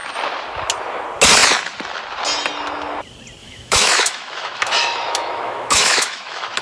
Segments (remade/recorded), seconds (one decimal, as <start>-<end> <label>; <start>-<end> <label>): 0.0-3.4 recorded; 3.4-6.6 remade